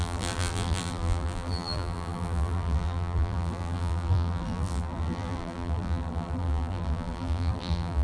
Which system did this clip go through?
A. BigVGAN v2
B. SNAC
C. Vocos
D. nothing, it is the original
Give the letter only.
A